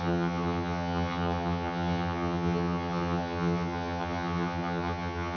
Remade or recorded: remade